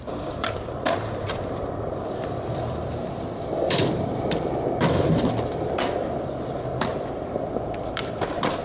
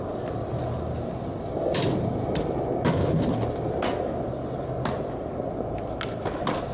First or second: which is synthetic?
first